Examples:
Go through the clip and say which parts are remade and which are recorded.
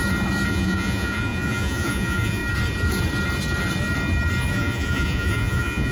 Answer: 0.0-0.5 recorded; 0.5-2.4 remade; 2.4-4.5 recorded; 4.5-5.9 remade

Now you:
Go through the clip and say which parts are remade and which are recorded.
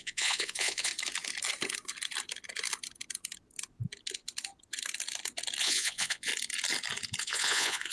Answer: 0.0-0.9 remade; 0.9-5.6 recorded; 5.6-6.3 remade; 6.3-7.2 recorded; 7.2-7.9 remade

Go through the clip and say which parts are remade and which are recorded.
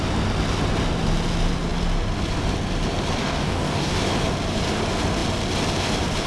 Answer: 0.0-3.2 recorded; 3.2-4.0 remade; 4.0-6.3 recorded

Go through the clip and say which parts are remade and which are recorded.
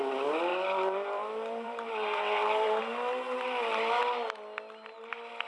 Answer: 0.0-0.5 recorded; 0.5-2.8 remade; 2.8-5.5 recorded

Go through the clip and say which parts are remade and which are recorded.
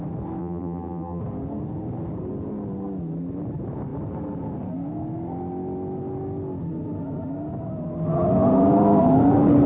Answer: 0.0-0.4 recorded; 0.4-1.2 remade; 1.2-9.7 recorded